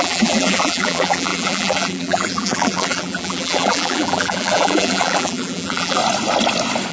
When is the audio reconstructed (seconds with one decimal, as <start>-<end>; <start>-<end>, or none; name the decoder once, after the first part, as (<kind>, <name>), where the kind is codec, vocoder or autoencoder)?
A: 0.0-6.0 (vocoder, BigVGAN v2)